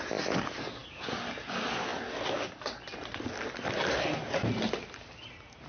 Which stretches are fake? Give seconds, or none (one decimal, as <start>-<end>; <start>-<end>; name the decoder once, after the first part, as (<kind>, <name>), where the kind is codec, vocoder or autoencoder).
none